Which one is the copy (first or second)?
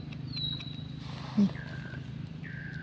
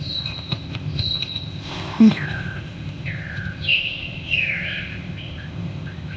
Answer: second